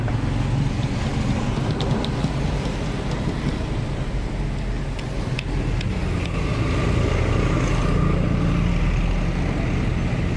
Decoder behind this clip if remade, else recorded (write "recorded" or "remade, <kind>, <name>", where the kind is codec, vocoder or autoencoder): recorded